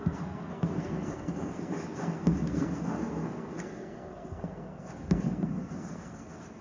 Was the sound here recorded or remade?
remade